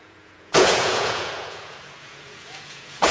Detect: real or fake fake